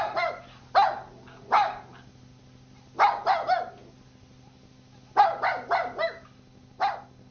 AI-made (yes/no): no